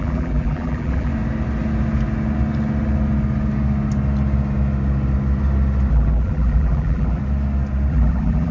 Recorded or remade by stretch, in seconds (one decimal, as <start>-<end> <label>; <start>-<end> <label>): 0.0-1.1 remade; 1.1-5.9 recorded; 5.9-7.2 remade; 7.2-7.9 recorded; 7.9-8.5 remade